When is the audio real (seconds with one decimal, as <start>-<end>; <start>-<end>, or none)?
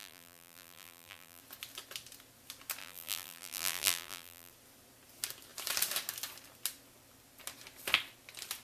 1.4-2.8; 4.5-8.6